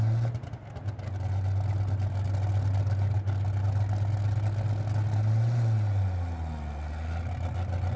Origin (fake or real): real